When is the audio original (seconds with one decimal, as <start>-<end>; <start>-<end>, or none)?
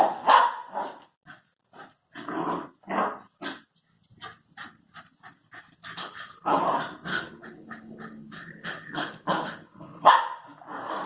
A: 0.0-6.0; 6.6-7.1; 10.1-11.1